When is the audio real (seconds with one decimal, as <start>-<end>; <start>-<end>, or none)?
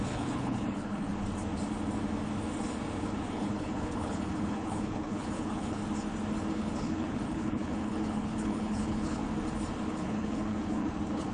1.1-3.0; 5.8-6.5; 9.2-9.9